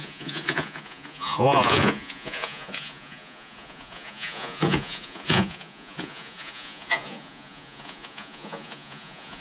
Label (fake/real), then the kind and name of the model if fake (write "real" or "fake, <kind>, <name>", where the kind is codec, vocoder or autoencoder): fake, vocoder, Vocos